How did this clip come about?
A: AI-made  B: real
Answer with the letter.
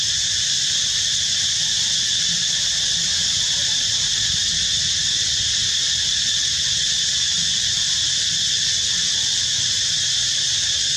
B